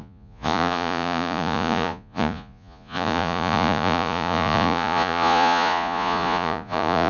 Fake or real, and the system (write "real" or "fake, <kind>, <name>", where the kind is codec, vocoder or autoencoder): fake, vocoder, Vocos